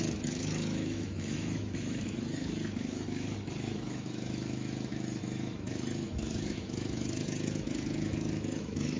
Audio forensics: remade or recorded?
remade